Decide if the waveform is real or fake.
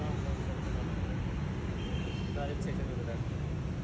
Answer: real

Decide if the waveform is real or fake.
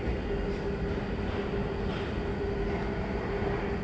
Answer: real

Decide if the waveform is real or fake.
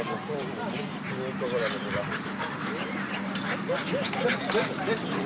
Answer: real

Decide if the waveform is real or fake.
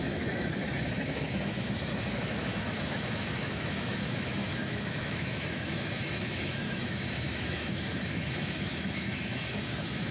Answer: fake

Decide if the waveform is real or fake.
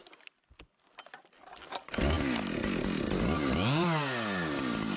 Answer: real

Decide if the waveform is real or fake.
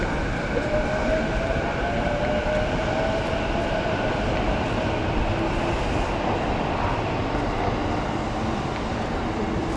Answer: real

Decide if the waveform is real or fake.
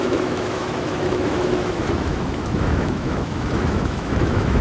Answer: fake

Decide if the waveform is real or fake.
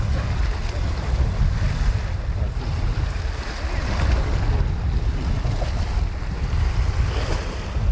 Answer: real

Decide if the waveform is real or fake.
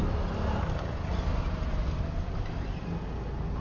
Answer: real